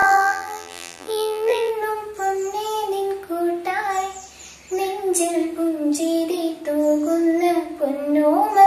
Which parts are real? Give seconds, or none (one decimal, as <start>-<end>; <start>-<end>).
1.7-8.7